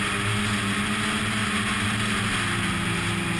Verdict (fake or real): real